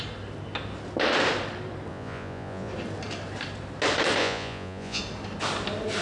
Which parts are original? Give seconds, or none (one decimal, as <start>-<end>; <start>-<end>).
0.0-1.9; 2.7-4.2; 5.0-6.0